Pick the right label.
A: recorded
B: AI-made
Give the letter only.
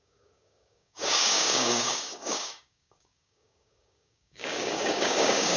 B